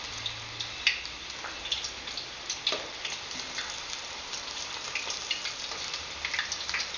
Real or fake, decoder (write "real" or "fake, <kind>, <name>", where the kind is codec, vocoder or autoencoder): real